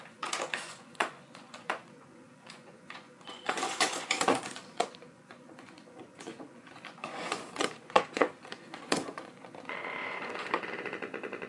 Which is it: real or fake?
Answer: fake